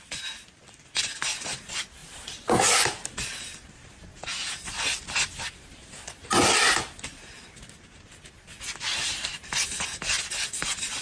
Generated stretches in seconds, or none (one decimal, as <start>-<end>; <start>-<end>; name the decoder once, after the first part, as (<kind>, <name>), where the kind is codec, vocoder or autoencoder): 4.1-4.6 (vocoder, Vocos)